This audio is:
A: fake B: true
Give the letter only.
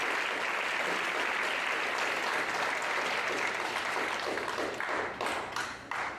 B